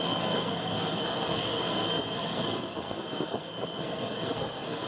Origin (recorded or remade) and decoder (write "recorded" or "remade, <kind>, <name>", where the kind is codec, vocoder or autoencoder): remade, codec, SNAC